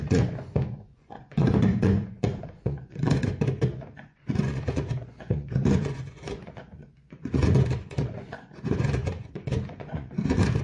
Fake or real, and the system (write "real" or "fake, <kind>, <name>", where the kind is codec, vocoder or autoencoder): fake, vocoder, Vocos